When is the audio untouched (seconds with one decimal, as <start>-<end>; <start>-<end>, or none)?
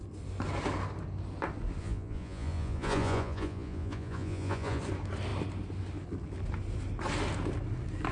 0.0-1.8; 4.8-8.1